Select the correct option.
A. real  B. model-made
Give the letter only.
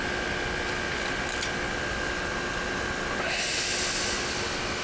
A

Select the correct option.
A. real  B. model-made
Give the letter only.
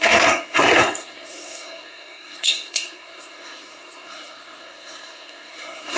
B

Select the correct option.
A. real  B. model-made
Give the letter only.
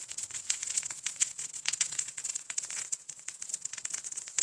B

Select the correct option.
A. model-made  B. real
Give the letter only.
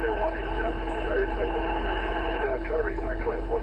A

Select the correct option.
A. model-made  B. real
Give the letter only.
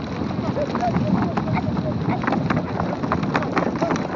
B